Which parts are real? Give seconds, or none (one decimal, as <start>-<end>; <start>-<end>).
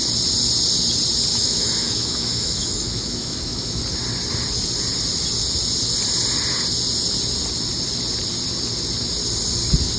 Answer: 0.0-1.3; 3.8-10.0